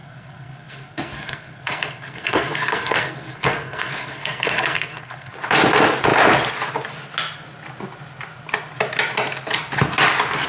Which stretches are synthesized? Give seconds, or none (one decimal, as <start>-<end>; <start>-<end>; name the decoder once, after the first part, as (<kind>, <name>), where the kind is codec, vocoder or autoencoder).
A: 0.0-5.3 (codec, SNAC)